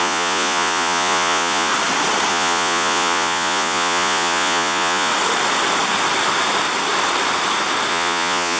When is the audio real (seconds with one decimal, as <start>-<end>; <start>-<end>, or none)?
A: 1.7-2.3; 5.1-7.9